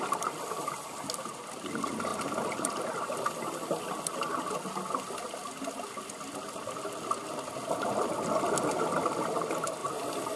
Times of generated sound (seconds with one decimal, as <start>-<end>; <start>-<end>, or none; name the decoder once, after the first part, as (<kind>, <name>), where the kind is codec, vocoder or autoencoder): none